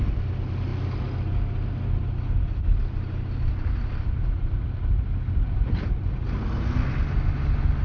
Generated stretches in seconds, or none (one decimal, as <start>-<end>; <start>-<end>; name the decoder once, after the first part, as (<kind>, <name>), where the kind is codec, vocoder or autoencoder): none